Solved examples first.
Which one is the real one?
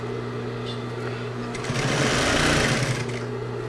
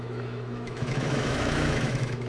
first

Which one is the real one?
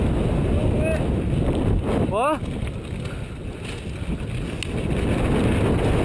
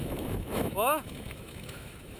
first